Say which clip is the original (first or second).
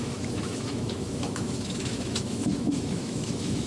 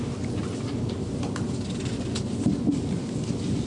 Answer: second